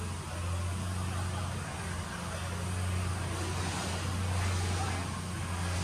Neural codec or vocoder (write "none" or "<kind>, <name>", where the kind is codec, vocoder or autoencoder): none